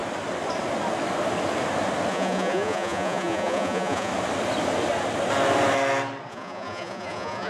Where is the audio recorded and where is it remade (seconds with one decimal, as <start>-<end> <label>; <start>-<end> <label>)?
0.0-2.1 recorded; 2.1-4.1 remade; 4.1-6.3 recorded; 6.3-7.5 remade

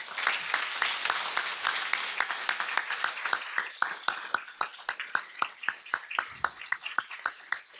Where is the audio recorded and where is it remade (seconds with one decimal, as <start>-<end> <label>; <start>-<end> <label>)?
0.0-6.5 recorded; 6.5-7.3 remade; 7.3-7.8 recorded